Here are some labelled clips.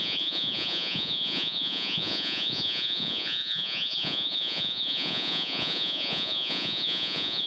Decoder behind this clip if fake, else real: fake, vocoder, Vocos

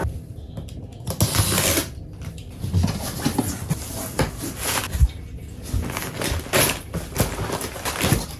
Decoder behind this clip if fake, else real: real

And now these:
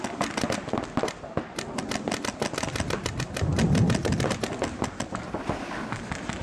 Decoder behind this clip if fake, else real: real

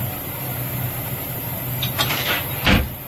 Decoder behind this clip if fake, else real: fake, vocoder, BigVGAN v2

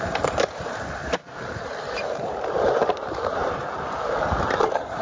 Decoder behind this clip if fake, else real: fake, vocoder, BigVGAN v2